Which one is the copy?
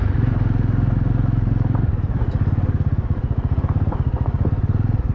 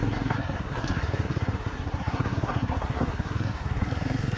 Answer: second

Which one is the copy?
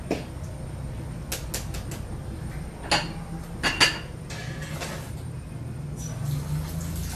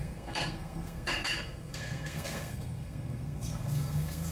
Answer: second